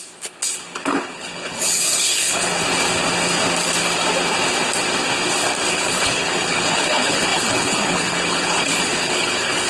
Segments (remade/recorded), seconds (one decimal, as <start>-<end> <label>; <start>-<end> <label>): 0.0-2.5 remade; 2.5-5.7 recorded; 5.7-9.7 remade